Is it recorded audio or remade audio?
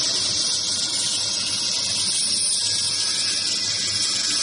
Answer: recorded